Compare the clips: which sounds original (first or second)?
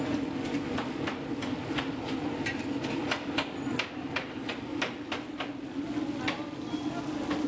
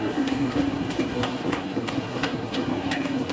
first